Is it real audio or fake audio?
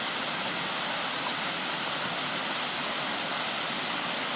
real